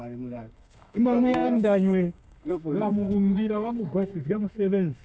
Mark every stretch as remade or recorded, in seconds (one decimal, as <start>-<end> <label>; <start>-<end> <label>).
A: 0.0-5.0 remade